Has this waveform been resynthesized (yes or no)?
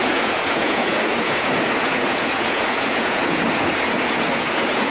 yes